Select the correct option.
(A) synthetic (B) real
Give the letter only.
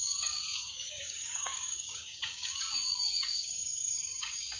A